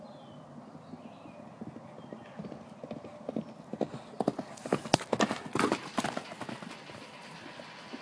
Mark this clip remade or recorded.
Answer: recorded